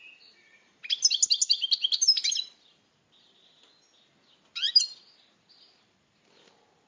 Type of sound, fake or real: real